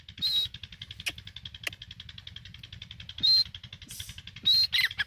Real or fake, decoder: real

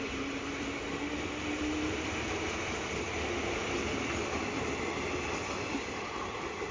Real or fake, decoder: real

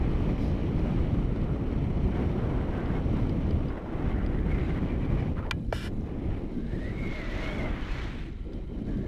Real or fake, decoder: real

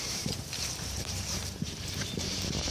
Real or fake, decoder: fake, vocoder, BigVGAN v2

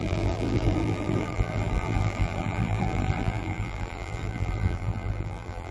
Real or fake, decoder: fake, vocoder, BigVGAN v2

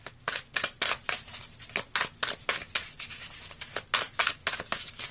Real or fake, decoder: real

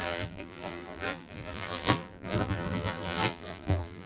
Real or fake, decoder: fake, vocoder, BigVGAN v2